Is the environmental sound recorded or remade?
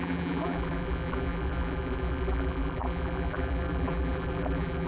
remade